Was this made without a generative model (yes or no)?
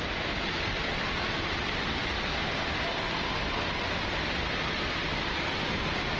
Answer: yes